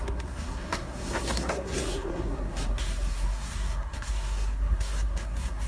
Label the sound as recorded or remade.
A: remade